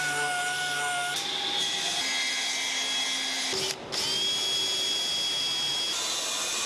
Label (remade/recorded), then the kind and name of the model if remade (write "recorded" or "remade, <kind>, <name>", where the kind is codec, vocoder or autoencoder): recorded